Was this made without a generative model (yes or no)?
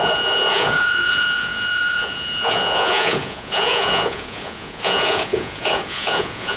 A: no